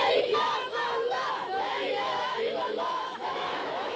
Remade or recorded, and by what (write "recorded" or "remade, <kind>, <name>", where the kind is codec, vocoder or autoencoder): remade, autoencoder, DAC-VAE